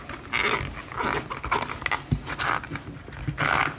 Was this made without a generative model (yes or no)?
yes